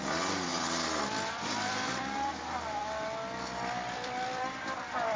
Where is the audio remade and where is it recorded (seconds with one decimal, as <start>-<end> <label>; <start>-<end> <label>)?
0.0-0.5 remade; 0.5-1.3 recorded; 1.3-2.8 remade; 2.8-3.4 recorded; 3.4-5.2 remade

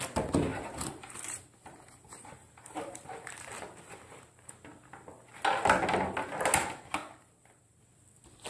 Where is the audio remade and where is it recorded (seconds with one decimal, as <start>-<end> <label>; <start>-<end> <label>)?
0.0-0.5 recorded; 0.5-4.5 remade; 4.5-7.0 recorded; 7.0-7.8 remade; 7.8-8.5 recorded

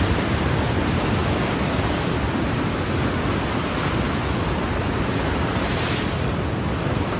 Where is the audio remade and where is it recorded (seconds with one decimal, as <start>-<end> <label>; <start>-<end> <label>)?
0.0-1.2 remade; 1.2-5.5 recorded; 5.5-7.2 remade

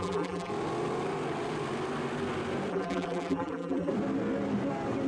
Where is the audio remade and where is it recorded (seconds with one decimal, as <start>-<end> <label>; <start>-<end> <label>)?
0.0-0.5 remade; 0.5-2.7 recorded; 2.7-3.9 remade; 3.9-5.1 recorded

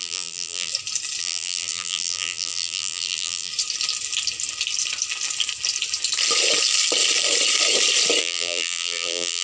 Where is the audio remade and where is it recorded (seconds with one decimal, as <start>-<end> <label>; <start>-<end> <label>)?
0.0-0.7 remade; 0.7-1.2 recorded; 1.2-3.5 remade; 3.5-8.2 recorded; 8.2-9.4 remade

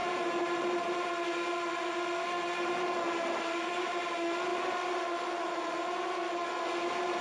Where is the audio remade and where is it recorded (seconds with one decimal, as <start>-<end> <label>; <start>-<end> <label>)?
0.0-7.2 recorded

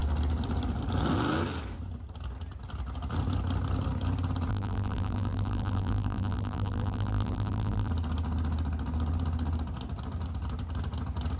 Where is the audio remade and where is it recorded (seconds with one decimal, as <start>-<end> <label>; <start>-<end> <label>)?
0.0-4.5 recorded; 4.5-7.9 remade; 7.9-11.4 recorded